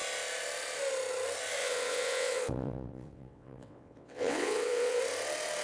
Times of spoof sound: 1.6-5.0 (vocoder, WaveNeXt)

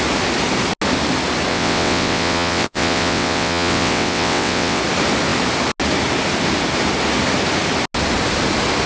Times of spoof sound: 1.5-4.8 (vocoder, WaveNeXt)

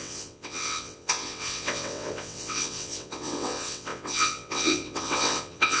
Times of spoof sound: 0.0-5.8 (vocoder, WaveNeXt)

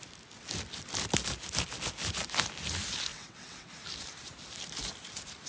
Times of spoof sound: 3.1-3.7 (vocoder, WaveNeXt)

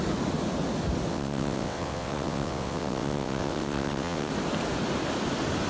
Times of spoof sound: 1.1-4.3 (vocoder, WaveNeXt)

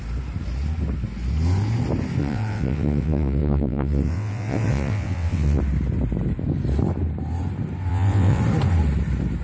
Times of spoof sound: 2.2-5.6 (vocoder, WaveNeXt); 7.9-8.4

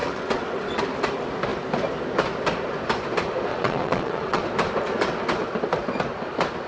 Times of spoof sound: 0.0-0.8 (vocoder, WaveNeXt); 3.5-4.4

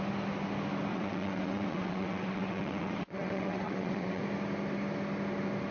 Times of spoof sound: 0.9-4.2 (vocoder, WaveNeXt)